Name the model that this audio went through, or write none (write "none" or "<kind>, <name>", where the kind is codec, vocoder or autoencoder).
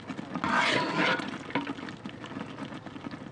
none